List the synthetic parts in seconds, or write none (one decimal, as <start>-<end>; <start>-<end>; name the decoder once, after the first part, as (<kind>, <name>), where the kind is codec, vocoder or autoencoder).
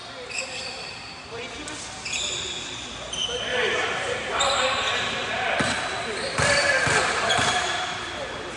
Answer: 3.5-4.4 (vocoder, BigVGAN v2)